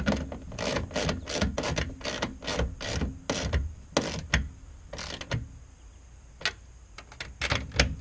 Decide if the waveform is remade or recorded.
recorded